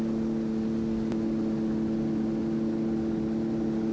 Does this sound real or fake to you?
real